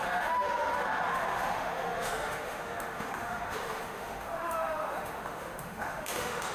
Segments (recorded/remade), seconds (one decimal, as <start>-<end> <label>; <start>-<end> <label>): 0.0-6.5 remade